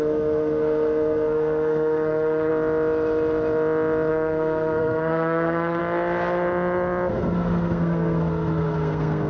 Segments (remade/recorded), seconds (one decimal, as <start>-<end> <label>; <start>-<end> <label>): 0.0-2.5 remade; 2.5-4.1 recorded; 4.1-5.8 remade; 5.8-7.1 recorded; 7.1-9.3 remade